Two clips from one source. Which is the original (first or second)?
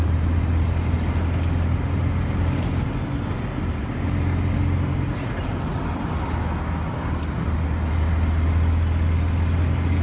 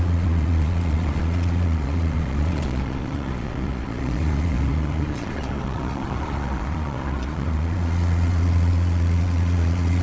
first